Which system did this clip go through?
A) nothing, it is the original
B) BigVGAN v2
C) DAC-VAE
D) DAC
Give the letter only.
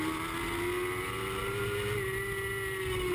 A